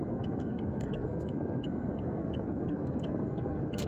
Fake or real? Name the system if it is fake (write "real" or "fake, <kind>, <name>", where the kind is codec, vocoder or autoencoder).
fake, codec, SNAC